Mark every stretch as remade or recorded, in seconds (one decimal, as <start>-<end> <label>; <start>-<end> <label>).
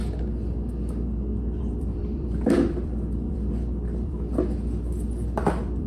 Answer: 0.0-1.6 recorded; 1.6-5.9 remade